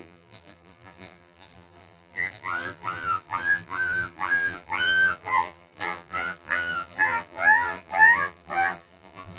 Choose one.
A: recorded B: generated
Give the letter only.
B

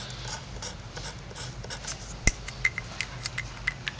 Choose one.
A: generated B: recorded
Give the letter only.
B